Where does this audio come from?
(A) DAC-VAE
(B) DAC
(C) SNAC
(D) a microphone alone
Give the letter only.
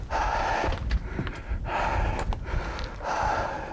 D